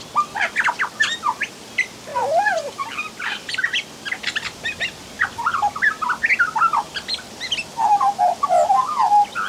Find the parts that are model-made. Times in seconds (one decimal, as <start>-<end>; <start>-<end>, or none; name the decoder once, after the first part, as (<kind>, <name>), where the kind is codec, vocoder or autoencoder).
none